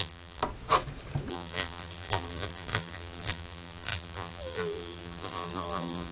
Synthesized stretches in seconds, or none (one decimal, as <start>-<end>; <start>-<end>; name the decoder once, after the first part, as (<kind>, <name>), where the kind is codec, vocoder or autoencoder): 0.0-0.4 (vocoder, BigVGAN v2); 1.3-6.1